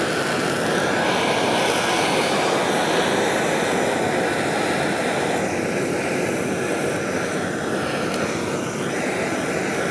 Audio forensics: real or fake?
real